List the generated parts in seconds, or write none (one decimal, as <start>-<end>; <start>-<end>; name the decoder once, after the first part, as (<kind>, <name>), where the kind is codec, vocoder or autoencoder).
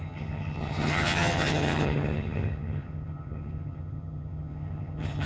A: 0.0-5.3 (vocoder, HiFi-GAN)